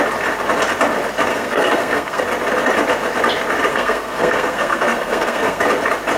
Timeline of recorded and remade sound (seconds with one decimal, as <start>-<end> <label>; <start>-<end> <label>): 0.0-1.3 recorded; 1.3-2.2 remade; 2.2-3.7 recorded; 3.7-5.6 remade; 5.6-6.2 recorded